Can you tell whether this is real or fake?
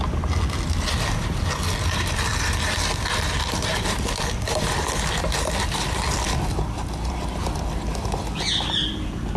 fake